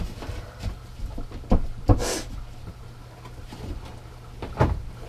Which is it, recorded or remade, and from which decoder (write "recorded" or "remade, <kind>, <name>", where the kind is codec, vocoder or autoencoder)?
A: recorded